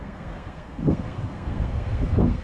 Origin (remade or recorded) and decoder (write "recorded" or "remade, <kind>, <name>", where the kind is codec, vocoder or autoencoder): remade, codec, SNAC